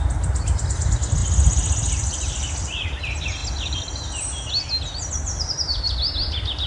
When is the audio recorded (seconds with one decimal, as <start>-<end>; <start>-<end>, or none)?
0.0-6.7